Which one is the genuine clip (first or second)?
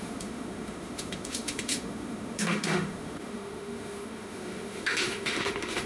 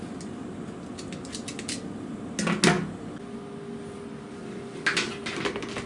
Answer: second